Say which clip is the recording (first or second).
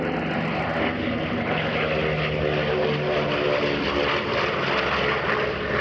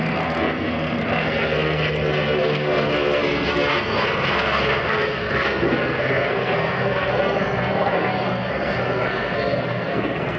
first